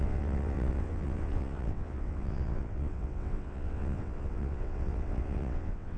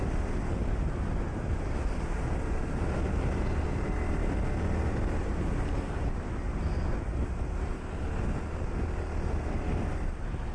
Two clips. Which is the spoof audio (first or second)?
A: first